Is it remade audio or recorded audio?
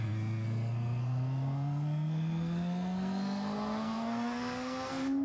remade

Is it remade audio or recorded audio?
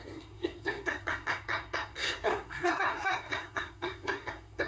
remade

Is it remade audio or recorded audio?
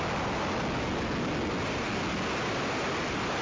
recorded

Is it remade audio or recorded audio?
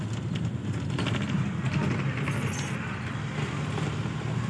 recorded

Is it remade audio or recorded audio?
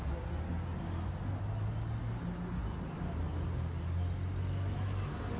recorded